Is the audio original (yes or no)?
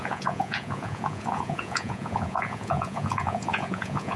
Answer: no